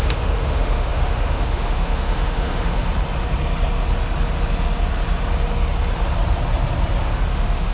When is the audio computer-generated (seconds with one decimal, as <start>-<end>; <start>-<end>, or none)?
0.0-2.9; 7.3-7.7